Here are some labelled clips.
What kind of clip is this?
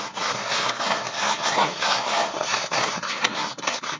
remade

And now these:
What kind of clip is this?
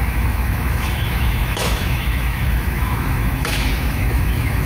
remade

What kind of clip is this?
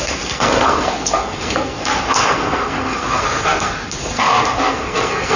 remade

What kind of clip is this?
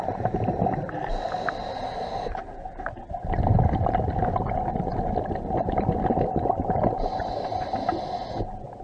recorded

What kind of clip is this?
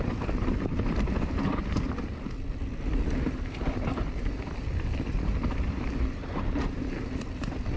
recorded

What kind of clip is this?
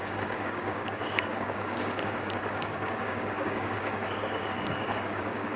remade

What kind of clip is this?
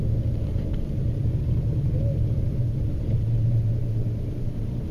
recorded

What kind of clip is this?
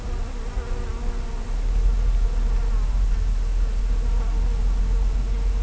recorded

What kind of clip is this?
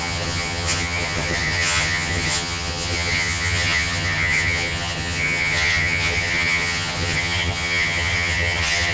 remade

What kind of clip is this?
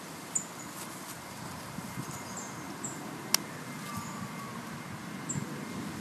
recorded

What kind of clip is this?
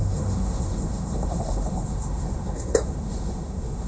remade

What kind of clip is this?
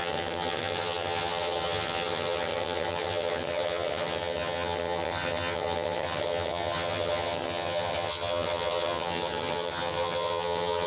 remade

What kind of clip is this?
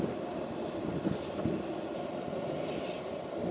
recorded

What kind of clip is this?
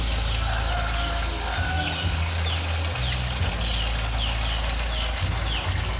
recorded